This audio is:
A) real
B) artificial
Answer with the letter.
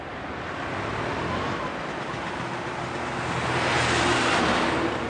A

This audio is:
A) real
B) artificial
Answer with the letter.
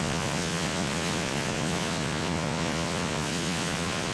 B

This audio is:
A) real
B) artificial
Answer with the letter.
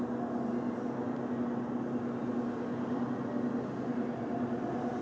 A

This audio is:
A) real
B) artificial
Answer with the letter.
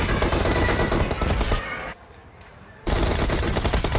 A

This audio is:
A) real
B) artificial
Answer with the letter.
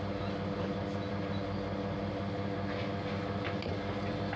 A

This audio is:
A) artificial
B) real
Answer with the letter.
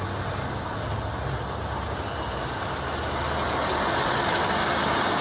B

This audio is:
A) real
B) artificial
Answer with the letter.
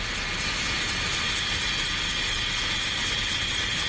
A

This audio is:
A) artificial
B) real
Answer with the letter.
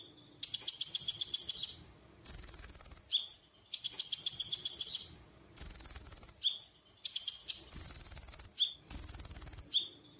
A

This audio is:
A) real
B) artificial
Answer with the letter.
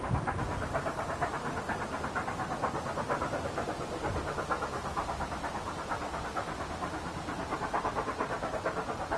A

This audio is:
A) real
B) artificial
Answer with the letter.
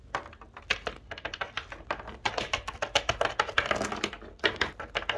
A